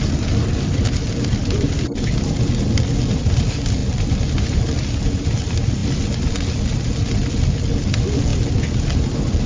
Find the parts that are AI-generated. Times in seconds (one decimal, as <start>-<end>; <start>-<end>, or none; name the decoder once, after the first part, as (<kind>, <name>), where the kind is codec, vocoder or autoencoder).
none